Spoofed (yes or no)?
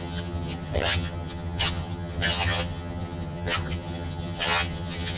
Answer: yes